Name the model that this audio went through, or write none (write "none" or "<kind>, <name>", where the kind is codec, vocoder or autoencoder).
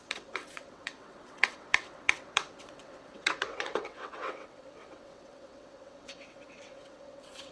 vocoder, WaveNeXt